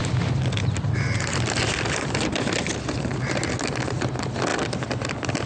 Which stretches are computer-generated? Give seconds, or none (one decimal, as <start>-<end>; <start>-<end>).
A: none